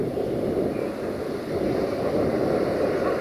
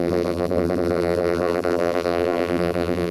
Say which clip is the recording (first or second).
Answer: first